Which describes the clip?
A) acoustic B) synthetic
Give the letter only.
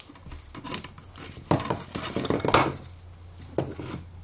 A